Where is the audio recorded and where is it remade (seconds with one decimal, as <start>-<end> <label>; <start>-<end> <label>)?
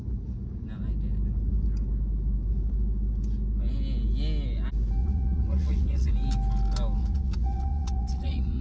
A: 0.0-5.0 recorded; 5.0-6.1 remade; 6.1-7.0 recorded; 7.0-8.6 remade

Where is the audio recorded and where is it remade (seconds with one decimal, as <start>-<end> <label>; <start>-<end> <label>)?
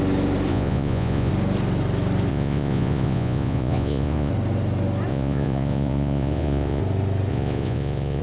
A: 0.0-0.5 recorded; 0.5-1.3 remade; 1.3-2.3 recorded; 2.3-4.3 remade; 4.3-5.1 recorded; 5.1-6.8 remade; 6.8-7.3 recorded; 7.3-8.2 remade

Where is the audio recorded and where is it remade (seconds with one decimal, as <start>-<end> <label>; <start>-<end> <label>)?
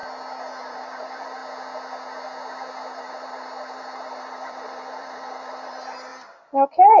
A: 0.0-0.6 recorded; 0.6-1.4 remade; 1.4-2.9 recorded; 2.9-6.1 remade; 6.1-7.0 recorded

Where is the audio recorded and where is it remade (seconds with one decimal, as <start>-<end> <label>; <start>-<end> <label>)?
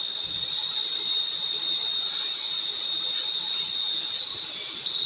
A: 0.0-5.1 recorded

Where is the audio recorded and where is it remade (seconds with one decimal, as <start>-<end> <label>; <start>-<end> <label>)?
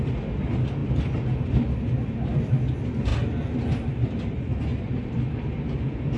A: 0.0-6.2 recorded